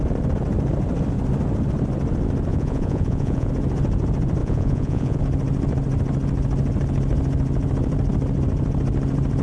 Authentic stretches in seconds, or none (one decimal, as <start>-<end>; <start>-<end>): 0.0-2.5; 3.5-4.4; 5.2-9.4